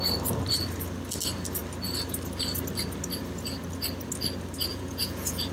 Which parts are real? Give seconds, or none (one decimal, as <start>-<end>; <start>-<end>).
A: 0.0-4.7